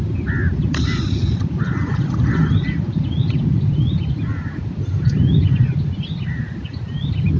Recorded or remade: recorded